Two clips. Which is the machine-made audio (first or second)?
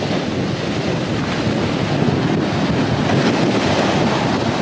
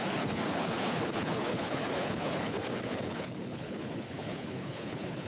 second